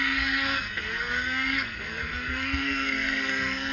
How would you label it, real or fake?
fake